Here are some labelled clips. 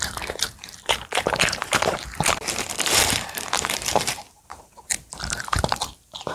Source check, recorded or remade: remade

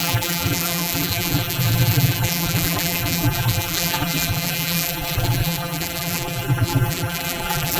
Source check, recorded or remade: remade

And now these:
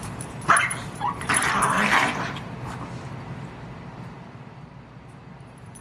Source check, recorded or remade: remade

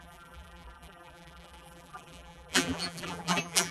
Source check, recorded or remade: remade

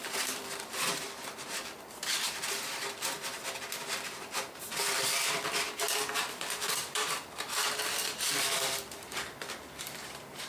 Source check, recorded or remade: remade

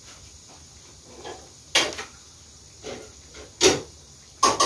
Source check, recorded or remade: recorded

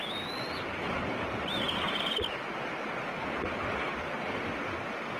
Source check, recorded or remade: recorded